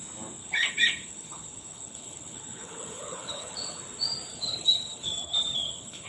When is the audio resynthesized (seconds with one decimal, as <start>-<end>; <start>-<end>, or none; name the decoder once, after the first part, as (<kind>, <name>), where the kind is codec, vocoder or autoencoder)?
0.4-3.8 (codec, HILCodec); 4.3-6.1